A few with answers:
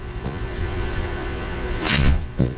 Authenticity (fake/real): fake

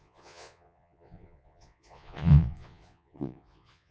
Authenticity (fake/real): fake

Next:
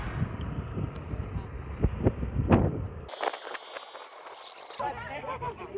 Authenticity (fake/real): real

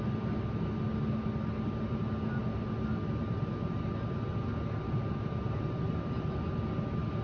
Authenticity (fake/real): real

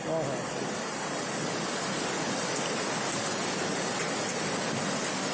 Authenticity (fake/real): real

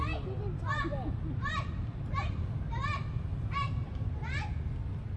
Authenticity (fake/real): real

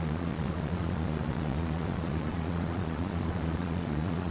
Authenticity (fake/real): fake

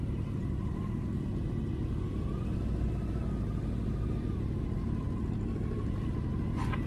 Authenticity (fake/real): real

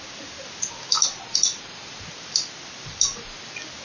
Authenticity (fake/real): real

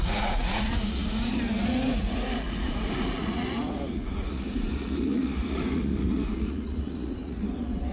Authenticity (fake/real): fake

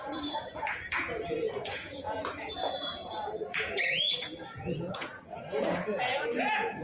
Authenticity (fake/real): fake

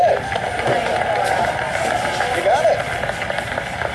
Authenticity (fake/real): real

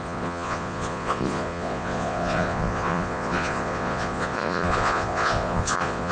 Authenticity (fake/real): fake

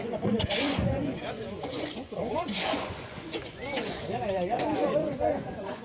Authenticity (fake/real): fake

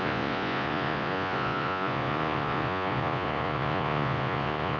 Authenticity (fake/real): fake